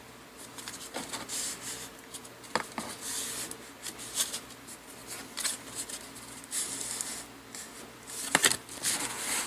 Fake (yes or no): no